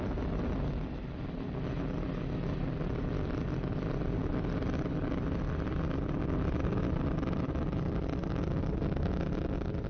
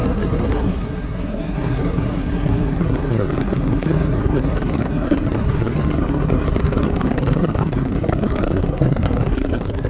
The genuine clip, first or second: first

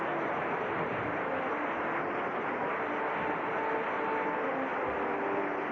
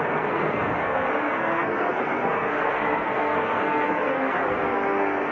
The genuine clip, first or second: first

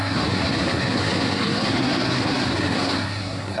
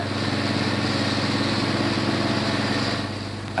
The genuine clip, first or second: second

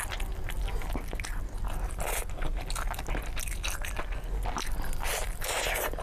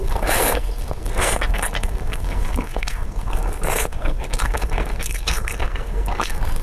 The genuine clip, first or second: first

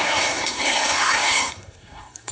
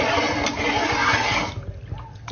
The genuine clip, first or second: second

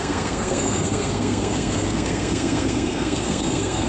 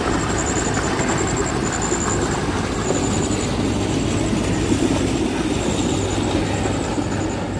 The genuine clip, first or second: second